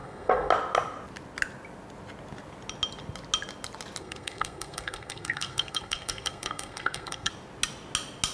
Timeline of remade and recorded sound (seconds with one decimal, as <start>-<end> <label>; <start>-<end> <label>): 0.0-0.5 remade; 0.5-4.0 recorded; 4.0-7.3 remade; 7.3-8.3 recorded